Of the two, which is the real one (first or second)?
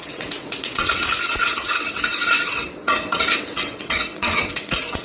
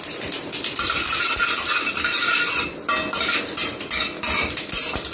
second